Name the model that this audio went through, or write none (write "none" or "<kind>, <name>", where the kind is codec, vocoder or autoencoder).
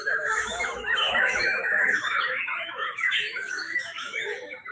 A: autoencoder, DAC-VAE